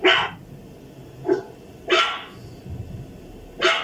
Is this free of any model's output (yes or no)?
no